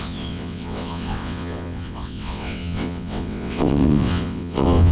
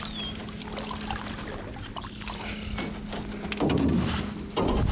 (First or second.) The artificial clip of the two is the first